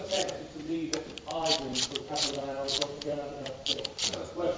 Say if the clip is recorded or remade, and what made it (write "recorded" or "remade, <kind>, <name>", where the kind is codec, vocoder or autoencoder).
remade, vocoder, BigVGAN v2